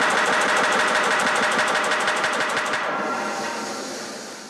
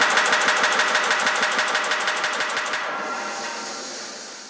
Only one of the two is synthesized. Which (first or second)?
first